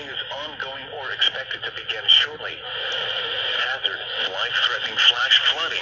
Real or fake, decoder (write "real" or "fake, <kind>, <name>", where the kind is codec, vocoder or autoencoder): real